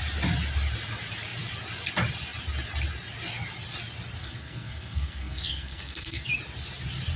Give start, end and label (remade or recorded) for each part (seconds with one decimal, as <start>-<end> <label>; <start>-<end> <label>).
0.0-4.2 recorded; 4.2-6.3 remade; 6.3-7.2 recorded